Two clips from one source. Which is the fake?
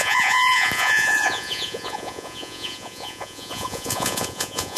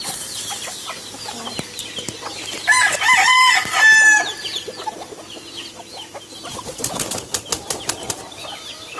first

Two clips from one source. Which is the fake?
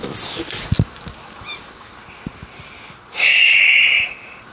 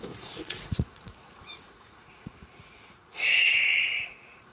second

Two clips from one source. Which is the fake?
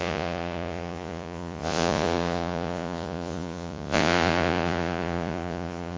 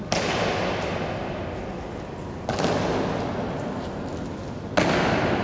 first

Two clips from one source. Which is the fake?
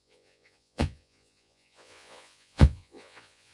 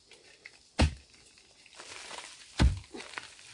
first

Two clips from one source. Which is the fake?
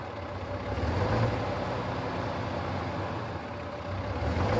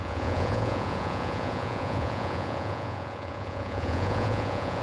second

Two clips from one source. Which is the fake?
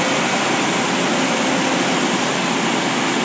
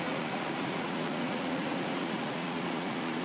second